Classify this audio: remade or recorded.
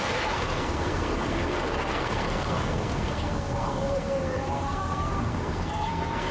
remade